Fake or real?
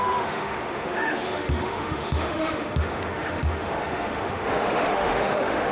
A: fake